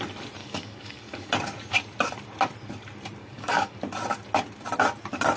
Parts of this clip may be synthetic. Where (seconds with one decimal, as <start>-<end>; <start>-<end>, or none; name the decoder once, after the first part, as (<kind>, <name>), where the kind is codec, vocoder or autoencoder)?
0.4-1.3 (codec, DAC); 3.2-3.8